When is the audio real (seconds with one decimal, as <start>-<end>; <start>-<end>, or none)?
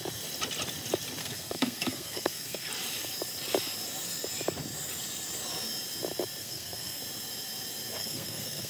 0.0-1.2; 2.7-6.4; 7.0-8.0